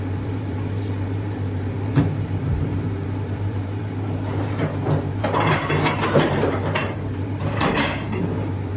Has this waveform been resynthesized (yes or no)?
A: yes